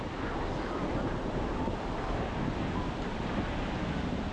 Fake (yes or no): no